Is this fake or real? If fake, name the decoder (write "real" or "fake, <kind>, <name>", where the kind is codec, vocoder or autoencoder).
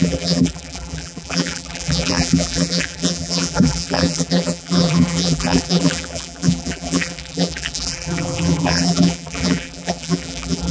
fake, vocoder, BigVGAN v2